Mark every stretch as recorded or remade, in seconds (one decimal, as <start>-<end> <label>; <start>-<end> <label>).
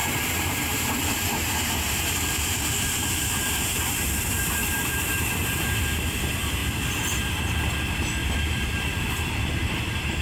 0.0-5.3 remade; 5.3-8.2 recorded; 8.2-10.2 remade